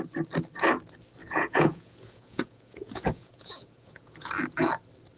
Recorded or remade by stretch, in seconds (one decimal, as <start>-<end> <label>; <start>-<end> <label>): 0.0-1.2 recorded; 1.2-4.3 remade; 4.3-5.2 recorded